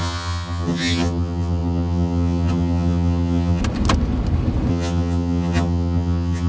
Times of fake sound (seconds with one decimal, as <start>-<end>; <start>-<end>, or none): 0.0-3.6; 4.7-6.5